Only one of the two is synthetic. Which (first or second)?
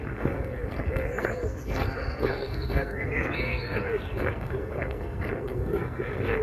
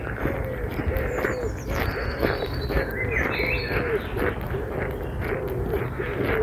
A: first